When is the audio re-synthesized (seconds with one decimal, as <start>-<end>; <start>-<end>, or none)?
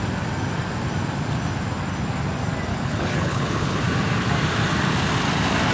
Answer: 2.7-3.8